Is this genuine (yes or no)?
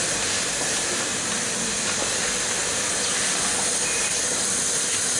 yes